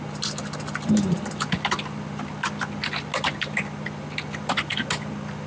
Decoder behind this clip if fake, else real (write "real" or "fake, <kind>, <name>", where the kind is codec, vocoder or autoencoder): real